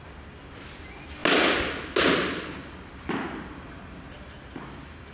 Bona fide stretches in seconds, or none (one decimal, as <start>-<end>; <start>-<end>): 0.0-5.1